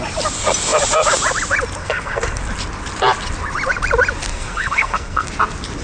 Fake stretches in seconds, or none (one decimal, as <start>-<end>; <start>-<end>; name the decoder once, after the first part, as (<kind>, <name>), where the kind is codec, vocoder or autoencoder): 1.8-2.4 (codec, SNAC); 4.3-5.3